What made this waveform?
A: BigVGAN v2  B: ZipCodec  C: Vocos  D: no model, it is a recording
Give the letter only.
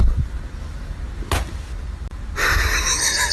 D